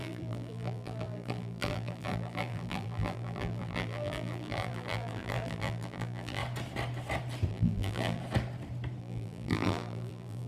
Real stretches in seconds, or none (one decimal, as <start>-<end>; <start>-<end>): 6.4-7.5; 8.2-9.0